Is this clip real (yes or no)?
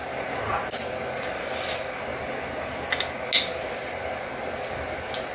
yes